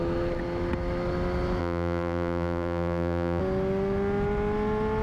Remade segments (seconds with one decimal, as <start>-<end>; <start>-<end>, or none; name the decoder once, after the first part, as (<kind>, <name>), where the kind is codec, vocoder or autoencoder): 1.6-3.4 (vocoder, BigVGAN v2)